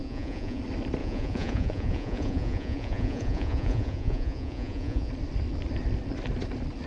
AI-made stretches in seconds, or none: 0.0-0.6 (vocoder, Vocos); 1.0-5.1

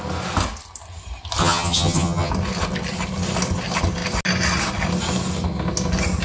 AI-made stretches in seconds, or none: 1.4-2.3 (vocoder, HiFi-GAN)

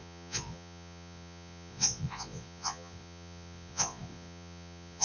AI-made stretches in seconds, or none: 0.0-5.0 (vocoder, Vocos)

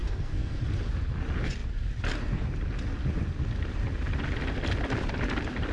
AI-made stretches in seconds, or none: 0.0-0.6 (codec, SNAC)

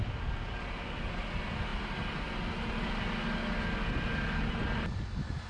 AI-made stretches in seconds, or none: none

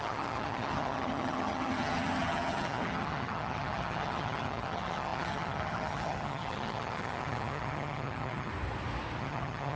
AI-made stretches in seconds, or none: 0.0-8.5 (vocoder, HiFi-GAN); 9.2-9.8

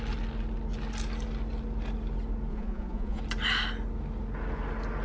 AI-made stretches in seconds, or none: 2.5-3.2 (vocoder, Vocos)